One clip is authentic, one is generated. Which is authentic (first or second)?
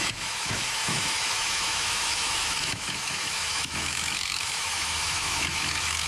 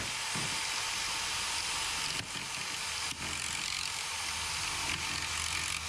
second